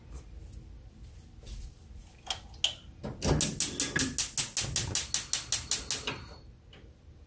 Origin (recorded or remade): recorded